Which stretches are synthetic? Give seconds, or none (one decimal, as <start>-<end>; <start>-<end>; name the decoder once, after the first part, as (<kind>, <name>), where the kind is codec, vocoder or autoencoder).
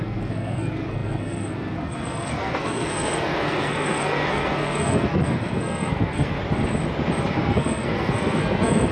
0.0-6.4 (codec, SNAC); 7.3-8.9